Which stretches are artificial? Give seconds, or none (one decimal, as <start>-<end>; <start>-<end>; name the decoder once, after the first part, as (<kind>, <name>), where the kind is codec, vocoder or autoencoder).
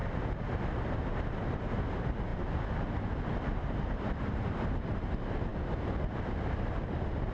0.8-5.5 (vocoder, BigVGAN v2); 6.1-7.3